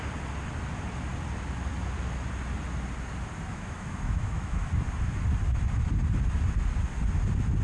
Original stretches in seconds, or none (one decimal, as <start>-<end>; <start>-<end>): 0.0-3.5; 4.7-7.6